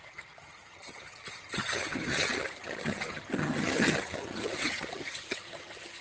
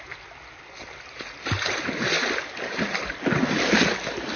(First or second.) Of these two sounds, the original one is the second